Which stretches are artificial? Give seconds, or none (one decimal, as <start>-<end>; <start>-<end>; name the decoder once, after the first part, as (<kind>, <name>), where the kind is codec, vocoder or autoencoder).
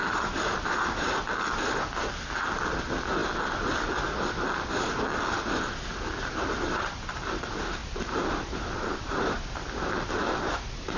0.0-1.2 (vocoder, BigVGAN v2); 7.8-9.5